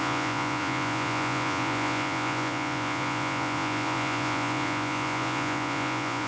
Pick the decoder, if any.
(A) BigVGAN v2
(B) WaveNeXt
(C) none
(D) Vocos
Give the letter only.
D